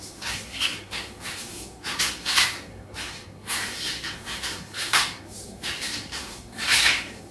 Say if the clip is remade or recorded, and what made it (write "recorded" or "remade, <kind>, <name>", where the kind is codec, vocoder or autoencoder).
remade, codec, SNAC